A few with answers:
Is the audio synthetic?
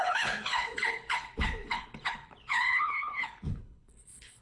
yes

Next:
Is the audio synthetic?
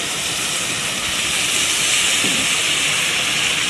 no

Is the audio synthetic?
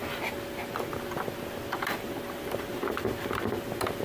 no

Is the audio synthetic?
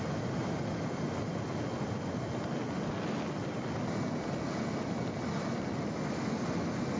no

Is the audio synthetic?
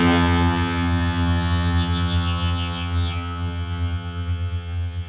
yes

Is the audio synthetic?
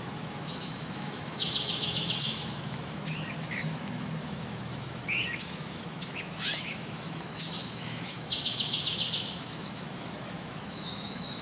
yes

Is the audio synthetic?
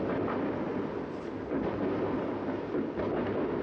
no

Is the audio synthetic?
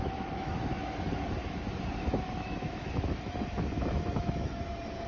yes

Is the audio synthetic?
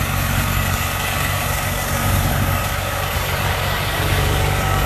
yes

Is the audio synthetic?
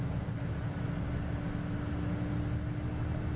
no